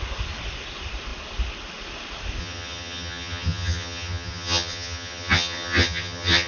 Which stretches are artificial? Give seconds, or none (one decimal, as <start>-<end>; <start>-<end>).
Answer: 2.4-6.5